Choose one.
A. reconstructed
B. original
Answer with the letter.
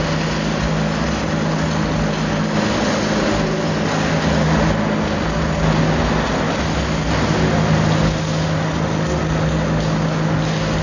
B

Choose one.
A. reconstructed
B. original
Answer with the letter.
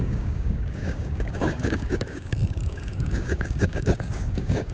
A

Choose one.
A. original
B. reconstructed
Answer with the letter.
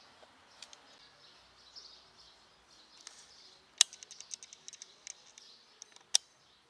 A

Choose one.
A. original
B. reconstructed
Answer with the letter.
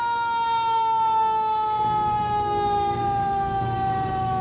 B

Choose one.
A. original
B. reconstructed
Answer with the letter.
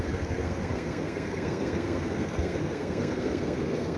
B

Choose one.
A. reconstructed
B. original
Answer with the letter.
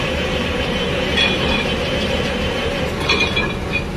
B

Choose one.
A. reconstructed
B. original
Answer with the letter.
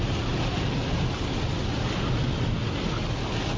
B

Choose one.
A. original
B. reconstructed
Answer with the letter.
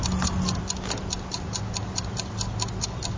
A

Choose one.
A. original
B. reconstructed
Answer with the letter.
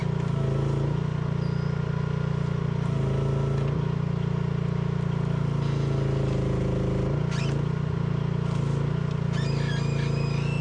A